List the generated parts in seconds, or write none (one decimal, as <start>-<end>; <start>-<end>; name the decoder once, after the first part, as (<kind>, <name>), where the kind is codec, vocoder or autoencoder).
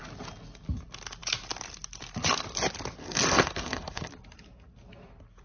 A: 3.0-4.1 (codec, SNAC)